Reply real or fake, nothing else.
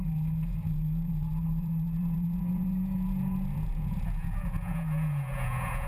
fake